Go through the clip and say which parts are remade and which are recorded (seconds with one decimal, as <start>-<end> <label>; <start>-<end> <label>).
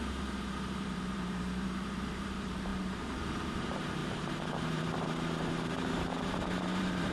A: 0.0-7.1 remade